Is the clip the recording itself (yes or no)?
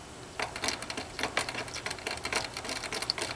yes